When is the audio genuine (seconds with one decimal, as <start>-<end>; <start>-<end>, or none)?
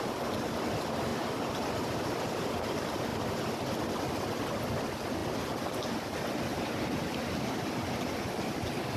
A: 0.0-1.1; 2.3-6.5; 7.2-9.0